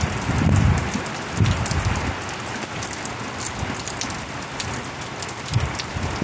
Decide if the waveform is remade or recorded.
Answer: recorded